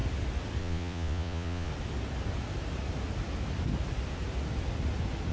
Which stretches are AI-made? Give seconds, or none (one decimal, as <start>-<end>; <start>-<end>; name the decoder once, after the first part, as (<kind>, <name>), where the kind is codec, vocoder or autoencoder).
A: 0.6-1.7 (vocoder, Vocos)